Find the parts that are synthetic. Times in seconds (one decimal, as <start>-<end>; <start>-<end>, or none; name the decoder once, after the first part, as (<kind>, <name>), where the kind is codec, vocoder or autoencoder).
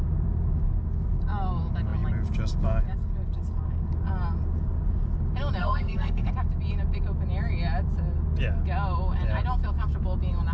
5.6-6.3 (codec, SNAC)